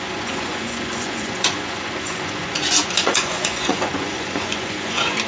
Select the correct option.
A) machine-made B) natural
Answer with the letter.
A